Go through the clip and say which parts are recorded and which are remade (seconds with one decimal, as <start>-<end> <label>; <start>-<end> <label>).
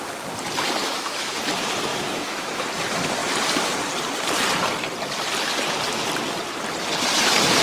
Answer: 0.0-0.8 recorded; 0.8-1.4 remade; 1.4-1.9 recorded; 1.9-2.5 remade; 2.5-7.6 recorded